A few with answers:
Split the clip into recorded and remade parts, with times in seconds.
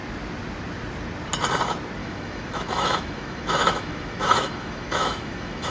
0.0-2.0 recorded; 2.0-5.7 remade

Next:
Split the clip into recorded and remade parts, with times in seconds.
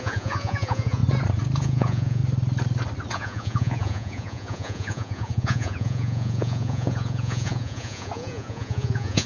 0.0-1.0 remade; 1.0-1.6 recorded; 1.6-2.2 remade; 2.2-3.1 recorded; 3.1-9.3 remade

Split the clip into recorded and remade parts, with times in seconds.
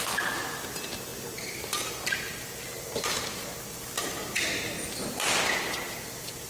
0.0-6.5 recorded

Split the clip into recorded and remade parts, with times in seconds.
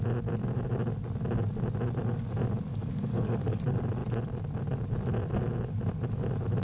0.0-2.7 recorded; 2.7-3.6 remade; 3.6-6.6 recorded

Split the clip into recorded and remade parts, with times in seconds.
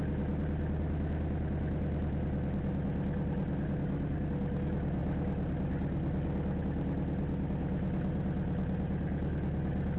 0.0-10.0 recorded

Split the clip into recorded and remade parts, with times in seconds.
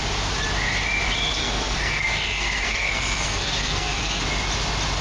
0.0-1.4 recorded; 1.4-4.2 remade; 4.2-5.0 recorded